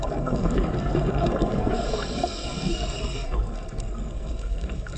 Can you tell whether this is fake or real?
fake